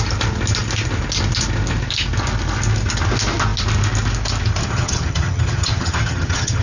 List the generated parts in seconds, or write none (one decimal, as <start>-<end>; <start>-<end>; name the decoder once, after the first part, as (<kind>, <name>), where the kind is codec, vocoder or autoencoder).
4.6-6.6 (vocoder, HiFi-GAN)